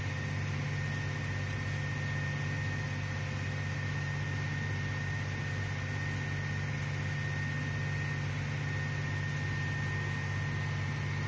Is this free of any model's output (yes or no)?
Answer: yes